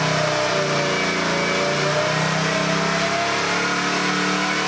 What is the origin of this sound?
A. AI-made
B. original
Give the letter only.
B